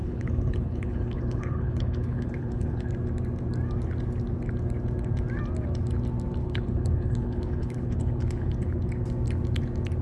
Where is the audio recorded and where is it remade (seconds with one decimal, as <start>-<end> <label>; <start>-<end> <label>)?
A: 0.0-2.9 remade; 2.9-6.4 recorded; 6.4-8.9 remade; 8.9-10.0 recorded